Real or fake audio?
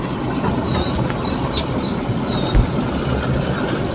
real